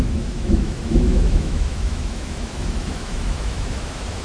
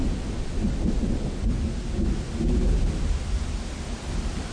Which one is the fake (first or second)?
first